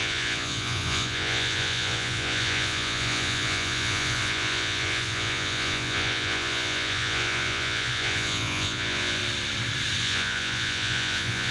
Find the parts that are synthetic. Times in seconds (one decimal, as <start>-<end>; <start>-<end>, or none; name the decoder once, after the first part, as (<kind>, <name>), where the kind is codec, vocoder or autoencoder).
0.0-9.2 (vocoder, Vocos); 10.0-11.5